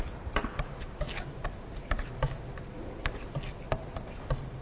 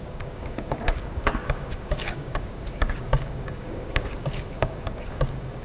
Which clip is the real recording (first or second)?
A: first